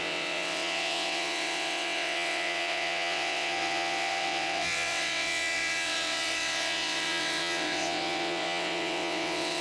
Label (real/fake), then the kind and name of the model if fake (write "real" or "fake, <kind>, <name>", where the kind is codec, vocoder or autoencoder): fake, vocoder, WaveNeXt